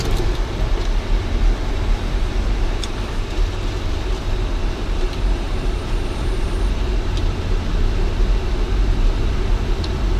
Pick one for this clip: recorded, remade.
remade